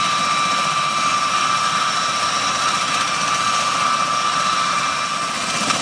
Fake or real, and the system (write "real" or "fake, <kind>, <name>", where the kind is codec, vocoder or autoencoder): real